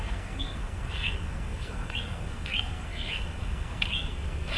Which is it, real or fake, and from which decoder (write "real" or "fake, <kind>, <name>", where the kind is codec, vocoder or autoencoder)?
fake, codec, SNAC